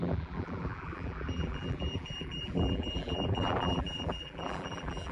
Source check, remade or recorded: remade